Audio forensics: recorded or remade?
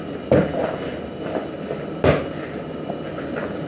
recorded